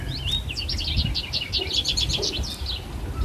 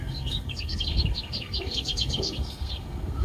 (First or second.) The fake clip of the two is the second